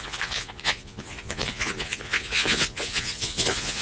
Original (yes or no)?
no